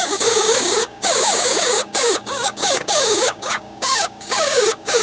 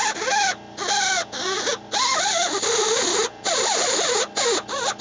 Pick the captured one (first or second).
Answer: second